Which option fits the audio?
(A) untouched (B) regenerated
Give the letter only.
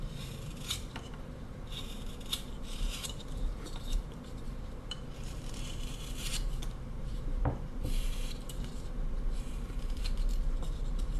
B